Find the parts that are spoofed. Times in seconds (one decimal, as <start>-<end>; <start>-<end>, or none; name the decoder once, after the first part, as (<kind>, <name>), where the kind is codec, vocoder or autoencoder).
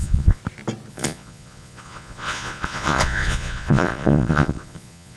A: 0.0-0.4 (vocoder, Vocos); 0.9-5.2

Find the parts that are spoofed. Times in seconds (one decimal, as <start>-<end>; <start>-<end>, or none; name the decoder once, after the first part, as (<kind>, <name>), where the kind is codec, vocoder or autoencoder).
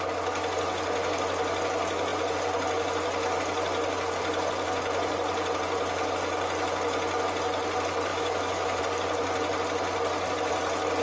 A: 8.1-8.8 (autoencoder, DAC-VAE)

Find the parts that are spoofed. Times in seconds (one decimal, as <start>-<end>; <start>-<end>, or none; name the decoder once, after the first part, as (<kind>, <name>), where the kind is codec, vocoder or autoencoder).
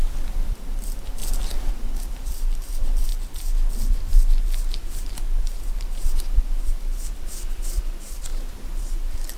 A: 0.5-1.2 (vocoder, BigVGAN v2); 1.7-3.1; 5.4-8.3; 8.8-9.4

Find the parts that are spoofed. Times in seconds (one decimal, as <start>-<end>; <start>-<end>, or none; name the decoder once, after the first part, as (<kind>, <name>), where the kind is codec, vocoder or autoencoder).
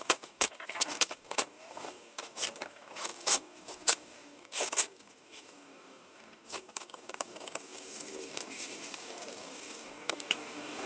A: 0.0-10.9 (codec, DAC)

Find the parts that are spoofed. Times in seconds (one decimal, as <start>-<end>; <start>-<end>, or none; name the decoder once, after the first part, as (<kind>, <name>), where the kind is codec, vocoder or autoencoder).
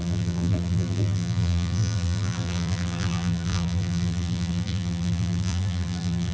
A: 0.0-6.3 (vocoder, BigVGAN v2)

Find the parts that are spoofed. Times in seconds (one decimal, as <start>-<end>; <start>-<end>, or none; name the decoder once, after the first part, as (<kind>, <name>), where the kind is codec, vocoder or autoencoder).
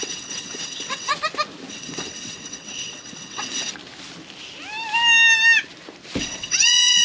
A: 0.0-1.1 (vocoder, WaveNeXt); 1.7-3.7; 6.2-7.0